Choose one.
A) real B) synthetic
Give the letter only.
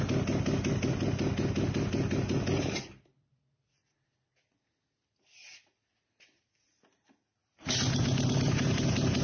A